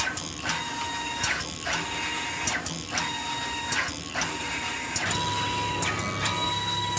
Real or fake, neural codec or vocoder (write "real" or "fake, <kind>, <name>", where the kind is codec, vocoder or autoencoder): real